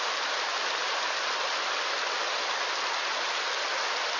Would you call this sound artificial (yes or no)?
no